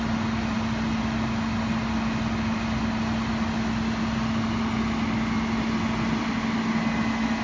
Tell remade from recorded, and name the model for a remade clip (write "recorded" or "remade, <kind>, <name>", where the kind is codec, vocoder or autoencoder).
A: recorded